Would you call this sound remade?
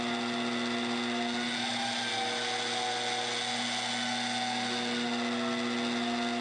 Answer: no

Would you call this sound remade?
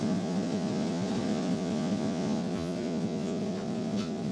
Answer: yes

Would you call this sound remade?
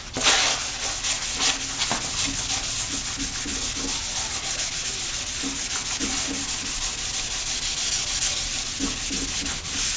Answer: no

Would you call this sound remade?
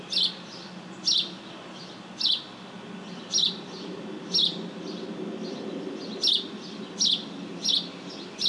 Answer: no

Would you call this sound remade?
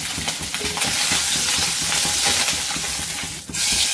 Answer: no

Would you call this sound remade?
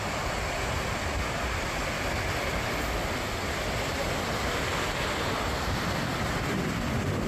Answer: no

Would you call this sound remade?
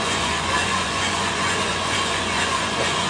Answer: yes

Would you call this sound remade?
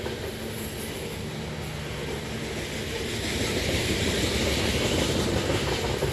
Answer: no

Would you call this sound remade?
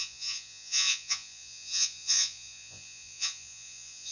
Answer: yes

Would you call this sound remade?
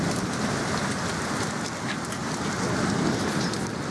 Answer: no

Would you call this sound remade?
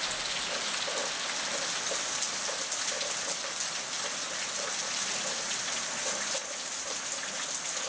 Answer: no